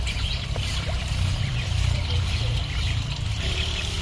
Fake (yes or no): yes